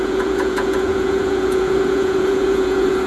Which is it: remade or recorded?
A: remade